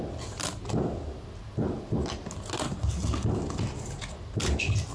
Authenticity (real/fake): real